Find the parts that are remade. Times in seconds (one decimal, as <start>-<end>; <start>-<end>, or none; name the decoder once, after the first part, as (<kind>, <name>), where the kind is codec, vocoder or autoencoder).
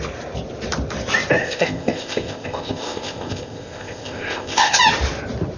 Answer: 1.4-4.8 (codec, ZipCodec)